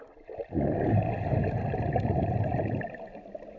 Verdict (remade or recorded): recorded